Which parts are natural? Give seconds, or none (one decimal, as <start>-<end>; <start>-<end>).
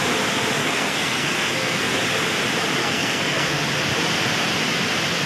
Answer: 0.0-0.6; 1.9-2.8; 3.7-5.3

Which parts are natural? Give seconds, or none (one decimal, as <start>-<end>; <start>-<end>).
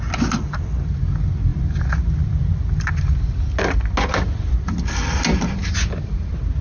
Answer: 0.0-6.6